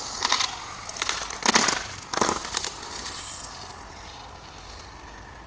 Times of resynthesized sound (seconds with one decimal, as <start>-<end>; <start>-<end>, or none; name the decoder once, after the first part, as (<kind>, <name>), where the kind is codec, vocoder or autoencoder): none